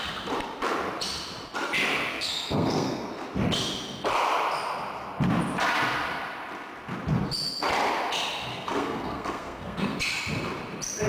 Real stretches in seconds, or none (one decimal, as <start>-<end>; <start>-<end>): 0.0-2.1; 3.1-8.5; 10.0-11.1